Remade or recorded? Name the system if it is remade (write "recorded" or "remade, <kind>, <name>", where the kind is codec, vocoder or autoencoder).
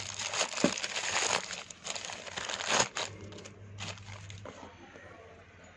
recorded